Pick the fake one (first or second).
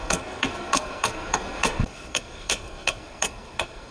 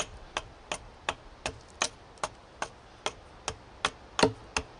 first